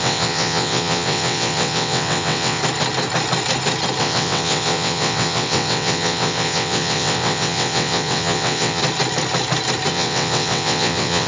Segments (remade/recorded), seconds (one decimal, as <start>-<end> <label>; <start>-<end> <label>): 0.0-2.6 remade; 2.6-4.0 recorded; 4.0-8.8 remade; 8.8-9.9 recorded; 9.9-11.3 remade